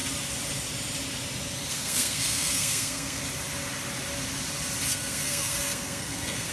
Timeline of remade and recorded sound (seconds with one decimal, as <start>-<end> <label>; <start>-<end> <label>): 0.0-1.7 recorded; 1.7-3.2 remade; 3.2-4.9 recorded; 4.9-6.5 remade